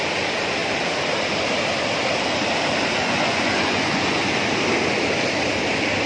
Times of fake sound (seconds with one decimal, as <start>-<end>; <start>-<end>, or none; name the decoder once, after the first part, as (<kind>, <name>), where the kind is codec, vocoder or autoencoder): 3.0-4.3 (vocoder, Vocos)